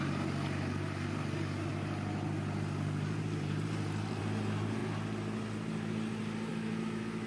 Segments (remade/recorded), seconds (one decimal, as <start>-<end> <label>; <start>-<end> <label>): 0.0-6.5 recorded; 6.5-7.3 remade